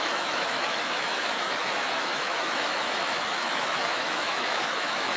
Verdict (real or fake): fake